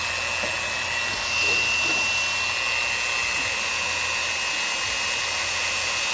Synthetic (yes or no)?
no